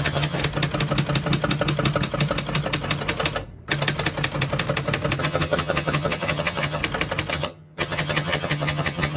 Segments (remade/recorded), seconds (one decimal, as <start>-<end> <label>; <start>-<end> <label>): 0.0-0.4 remade; 0.4-5.2 recorded; 5.2-6.8 remade; 6.8-7.3 recorded; 7.3-9.2 remade